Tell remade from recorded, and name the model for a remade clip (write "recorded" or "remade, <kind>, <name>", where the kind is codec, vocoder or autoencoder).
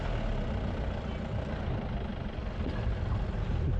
recorded